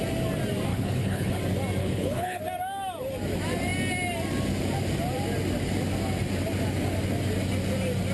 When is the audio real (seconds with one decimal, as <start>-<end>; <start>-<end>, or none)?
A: 0.0-0.7; 1.4-1.8; 2.4-8.1